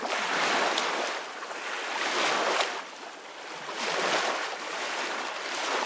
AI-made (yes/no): no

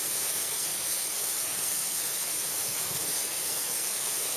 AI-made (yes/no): yes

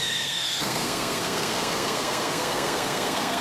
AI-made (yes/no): yes